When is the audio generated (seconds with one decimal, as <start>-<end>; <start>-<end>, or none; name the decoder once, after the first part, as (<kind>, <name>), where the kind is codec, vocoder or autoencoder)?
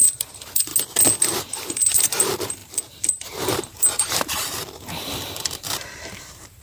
0.0-0.7 (vocoder, BigVGAN v2); 1.2-6.6